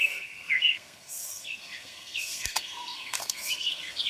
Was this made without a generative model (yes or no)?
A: no